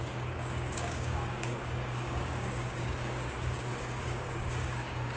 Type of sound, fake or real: fake